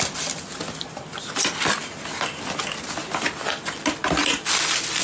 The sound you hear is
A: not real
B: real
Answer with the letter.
B